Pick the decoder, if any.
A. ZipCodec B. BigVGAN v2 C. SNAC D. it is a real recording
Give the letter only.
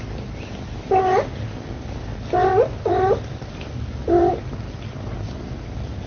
D